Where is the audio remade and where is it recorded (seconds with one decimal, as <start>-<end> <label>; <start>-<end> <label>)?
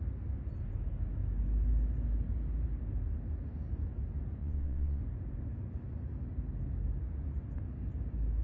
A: 0.0-4.4 recorded; 4.4-5.0 remade; 5.0-8.4 recorded